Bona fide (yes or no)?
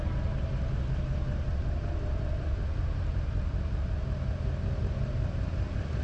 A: yes